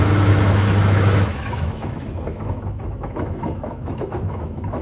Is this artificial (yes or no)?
yes